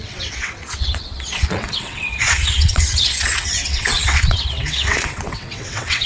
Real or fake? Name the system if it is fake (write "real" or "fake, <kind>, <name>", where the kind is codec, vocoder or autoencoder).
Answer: fake, vocoder, WaveNeXt